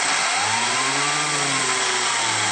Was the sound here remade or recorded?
recorded